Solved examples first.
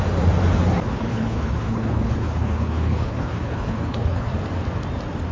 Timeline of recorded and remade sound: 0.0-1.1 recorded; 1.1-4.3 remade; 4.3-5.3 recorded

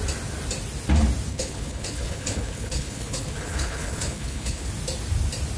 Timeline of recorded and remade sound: 0.0-1.3 recorded; 1.3-4.7 remade; 4.7-5.6 recorded

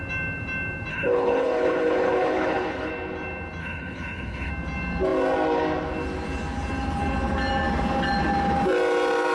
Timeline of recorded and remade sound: 0.0-0.9 recorded; 0.9-2.9 remade; 2.9-3.6 recorded; 3.6-4.5 remade; 4.5-9.3 recorded

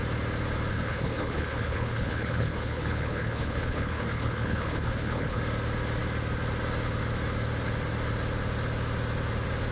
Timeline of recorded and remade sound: 0.0-0.7 recorded; 0.7-5.4 remade; 5.4-9.7 recorded

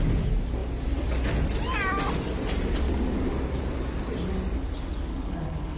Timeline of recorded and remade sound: 0.0-5.1 recorded; 5.1-5.8 remade